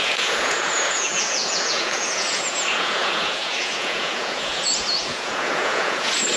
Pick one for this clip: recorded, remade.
remade